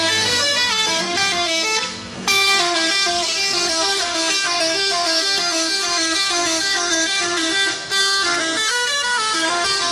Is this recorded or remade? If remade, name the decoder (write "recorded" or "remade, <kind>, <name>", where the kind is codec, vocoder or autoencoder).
remade, codec, SNAC